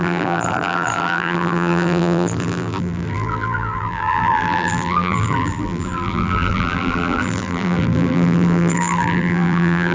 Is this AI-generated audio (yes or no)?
yes